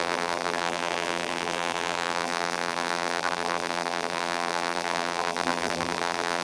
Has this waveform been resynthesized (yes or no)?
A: yes